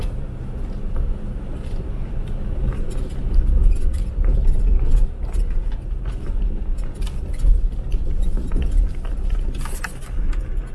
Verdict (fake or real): real